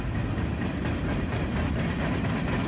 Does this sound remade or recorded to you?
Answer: recorded